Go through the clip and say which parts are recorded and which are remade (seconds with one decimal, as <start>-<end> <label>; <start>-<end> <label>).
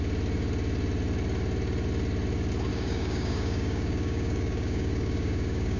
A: 0.0-2.7 recorded; 2.7-5.8 remade